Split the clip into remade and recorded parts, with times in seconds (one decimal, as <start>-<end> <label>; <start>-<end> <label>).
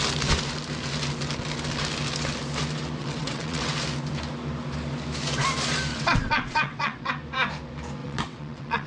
0.0-3.0 recorded; 3.0-3.7 remade; 3.7-5.9 recorded; 5.9-7.1 remade; 7.1-8.0 recorded; 8.0-8.9 remade